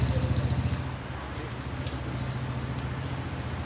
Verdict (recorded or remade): recorded